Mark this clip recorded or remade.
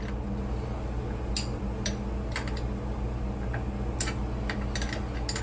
recorded